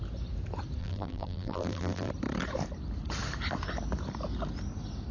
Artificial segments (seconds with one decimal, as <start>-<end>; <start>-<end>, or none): 0.8-2.1